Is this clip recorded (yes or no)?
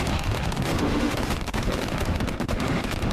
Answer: no